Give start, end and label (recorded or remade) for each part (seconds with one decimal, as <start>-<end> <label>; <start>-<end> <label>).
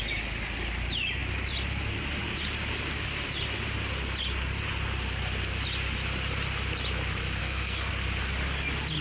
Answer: 0.0-7.4 recorded; 7.4-7.9 remade; 7.9-9.0 recorded